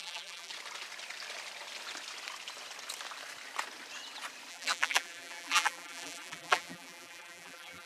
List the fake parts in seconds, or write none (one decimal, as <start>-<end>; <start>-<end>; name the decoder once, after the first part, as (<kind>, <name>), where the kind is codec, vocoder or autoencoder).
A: 0.0-0.5 (vocoder, BigVGAN v2); 4.5-7.9